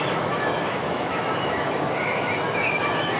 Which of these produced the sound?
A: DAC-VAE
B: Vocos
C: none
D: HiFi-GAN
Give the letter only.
A